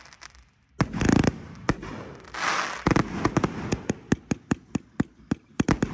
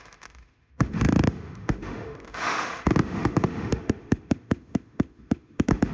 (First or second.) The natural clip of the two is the first